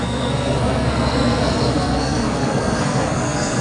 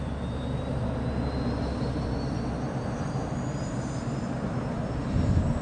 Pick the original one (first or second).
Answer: second